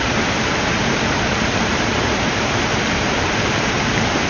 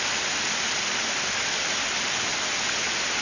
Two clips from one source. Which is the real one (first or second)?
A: second